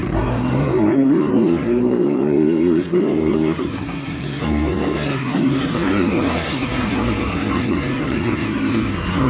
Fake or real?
fake